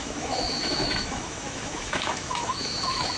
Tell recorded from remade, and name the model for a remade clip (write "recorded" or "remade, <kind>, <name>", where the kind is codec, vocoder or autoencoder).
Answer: remade, autoencoder, DAC-VAE